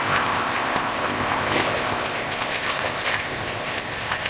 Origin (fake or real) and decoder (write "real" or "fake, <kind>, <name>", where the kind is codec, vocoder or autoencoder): fake, codec, ZipCodec